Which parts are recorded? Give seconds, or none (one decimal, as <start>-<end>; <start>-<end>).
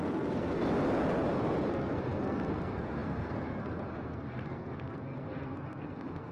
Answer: 0.6-1.7